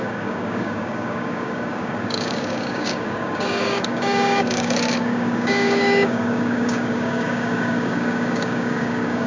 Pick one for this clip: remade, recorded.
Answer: remade